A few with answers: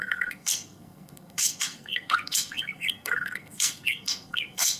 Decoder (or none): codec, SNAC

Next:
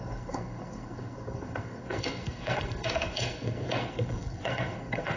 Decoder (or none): codec, SNAC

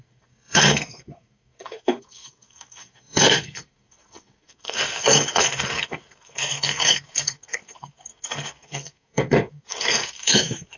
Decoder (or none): codec, SNAC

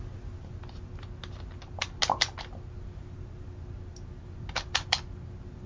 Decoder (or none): none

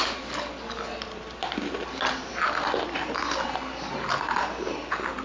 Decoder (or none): none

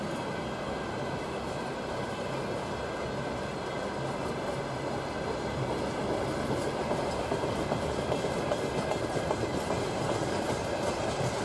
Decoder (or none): none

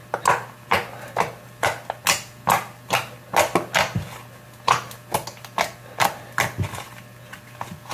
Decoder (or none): none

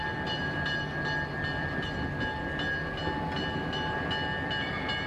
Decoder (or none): none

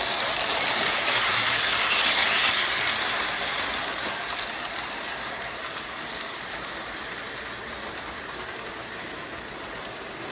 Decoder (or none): none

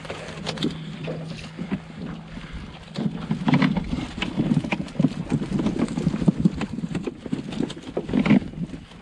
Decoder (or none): none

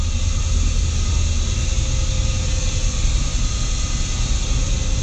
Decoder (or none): none